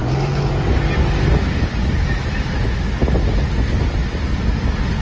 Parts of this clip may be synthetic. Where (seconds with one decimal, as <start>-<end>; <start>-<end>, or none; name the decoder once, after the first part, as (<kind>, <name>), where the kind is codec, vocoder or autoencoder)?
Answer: none